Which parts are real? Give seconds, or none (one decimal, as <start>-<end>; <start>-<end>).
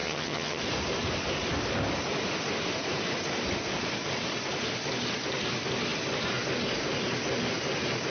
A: 0.6-8.1